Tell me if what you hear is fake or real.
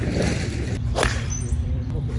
fake